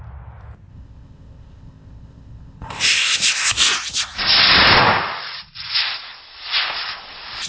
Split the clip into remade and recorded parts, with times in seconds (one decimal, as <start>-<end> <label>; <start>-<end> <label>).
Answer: 0.0-0.7 recorded; 0.7-3.5 remade; 3.5-7.5 recorded